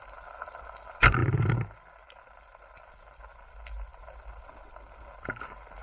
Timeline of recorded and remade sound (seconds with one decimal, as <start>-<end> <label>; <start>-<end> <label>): 0.0-5.8 recorded